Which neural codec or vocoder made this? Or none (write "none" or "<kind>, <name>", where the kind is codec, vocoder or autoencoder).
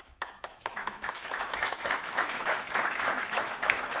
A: autoencoder, DAC-VAE